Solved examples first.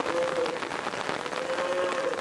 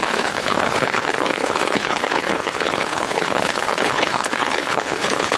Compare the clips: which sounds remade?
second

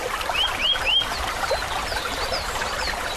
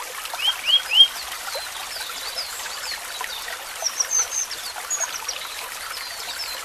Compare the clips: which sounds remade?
first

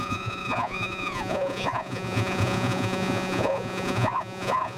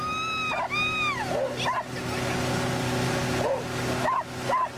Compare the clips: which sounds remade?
first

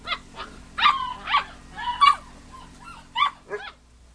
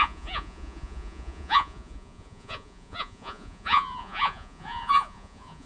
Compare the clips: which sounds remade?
second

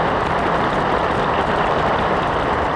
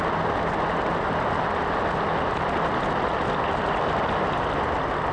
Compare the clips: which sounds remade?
first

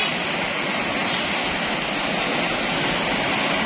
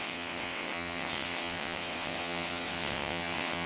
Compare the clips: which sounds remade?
second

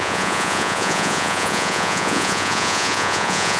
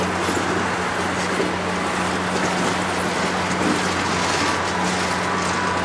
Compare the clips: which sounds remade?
first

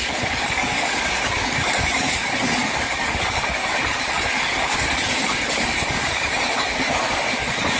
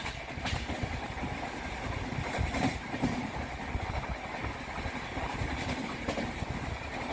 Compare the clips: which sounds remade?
first